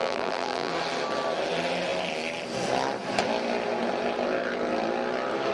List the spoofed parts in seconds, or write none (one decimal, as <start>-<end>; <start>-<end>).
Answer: 0.0-0.7